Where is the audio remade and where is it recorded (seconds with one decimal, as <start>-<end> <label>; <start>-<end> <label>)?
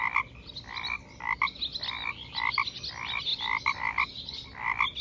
0.0-5.0 recorded